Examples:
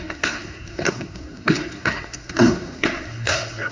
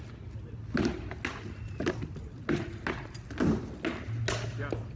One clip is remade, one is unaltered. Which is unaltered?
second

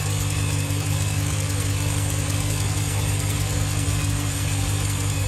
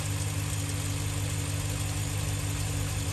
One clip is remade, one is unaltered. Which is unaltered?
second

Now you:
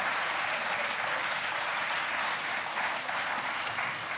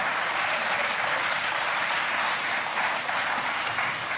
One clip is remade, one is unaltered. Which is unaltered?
first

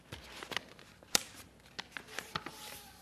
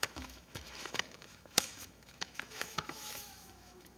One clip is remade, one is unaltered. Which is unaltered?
first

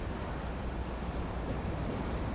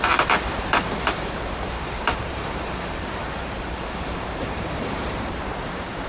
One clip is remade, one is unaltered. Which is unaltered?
first